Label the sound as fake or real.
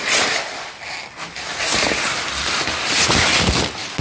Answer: real